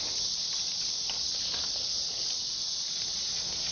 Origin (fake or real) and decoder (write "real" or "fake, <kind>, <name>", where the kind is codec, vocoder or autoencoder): real